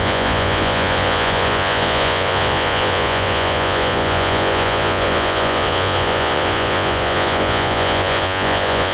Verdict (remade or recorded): remade